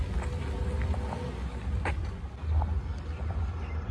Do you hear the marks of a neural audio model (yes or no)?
no